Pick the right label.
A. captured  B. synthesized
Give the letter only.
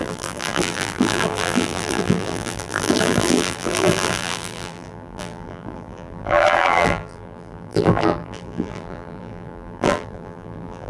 B